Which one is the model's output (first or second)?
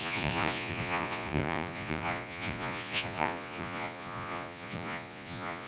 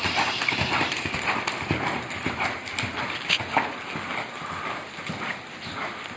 first